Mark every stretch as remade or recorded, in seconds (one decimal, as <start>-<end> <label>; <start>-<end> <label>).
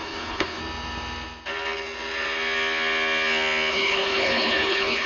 0.0-0.6 remade; 0.6-3.7 recorded; 3.7-5.1 remade